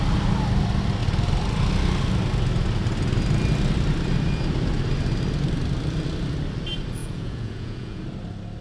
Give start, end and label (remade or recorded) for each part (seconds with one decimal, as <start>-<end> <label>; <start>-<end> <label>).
0.0-7.0 recorded; 7.0-8.0 remade; 8.0-8.6 recorded